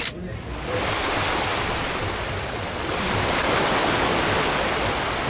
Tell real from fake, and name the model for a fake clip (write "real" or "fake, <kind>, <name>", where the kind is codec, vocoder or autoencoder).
real